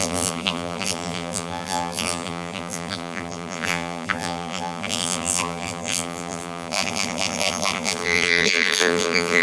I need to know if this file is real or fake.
fake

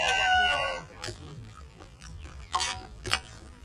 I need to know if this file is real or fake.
fake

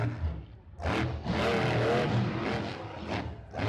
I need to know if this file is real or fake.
real